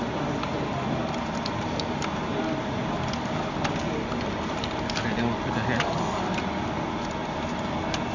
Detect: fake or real real